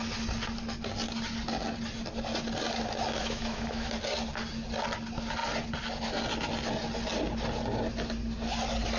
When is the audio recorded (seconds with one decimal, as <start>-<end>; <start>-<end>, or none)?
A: 0.0-3.2; 3.9-9.0